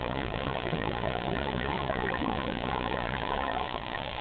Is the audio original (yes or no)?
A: no